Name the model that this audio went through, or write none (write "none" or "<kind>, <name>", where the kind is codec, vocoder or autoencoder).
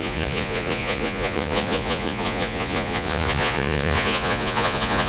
vocoder, Vocos